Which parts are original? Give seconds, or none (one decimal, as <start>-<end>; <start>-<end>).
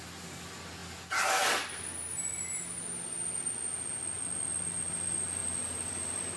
0.0-6.4